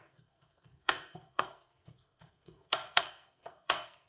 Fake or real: fake